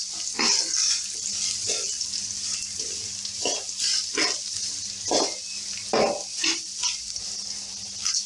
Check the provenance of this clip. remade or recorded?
recorded